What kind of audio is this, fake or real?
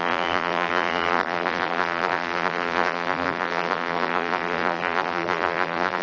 fake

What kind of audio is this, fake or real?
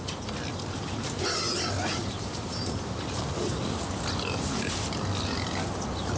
real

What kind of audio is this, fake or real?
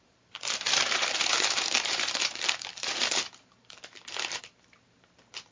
fake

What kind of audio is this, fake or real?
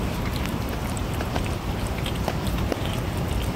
fake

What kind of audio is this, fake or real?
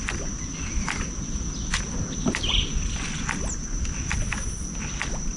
real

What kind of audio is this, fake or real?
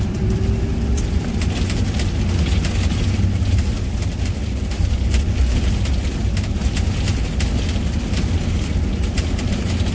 real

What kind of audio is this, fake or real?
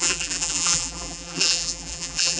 fake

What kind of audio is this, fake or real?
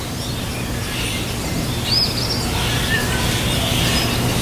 real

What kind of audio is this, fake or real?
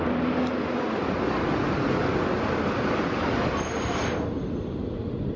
real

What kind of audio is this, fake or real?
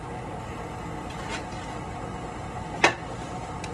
real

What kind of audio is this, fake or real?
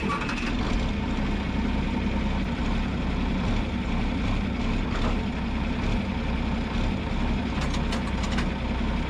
real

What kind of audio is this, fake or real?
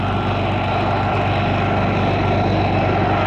real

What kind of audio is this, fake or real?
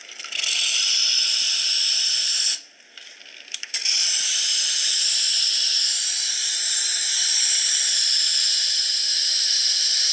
fake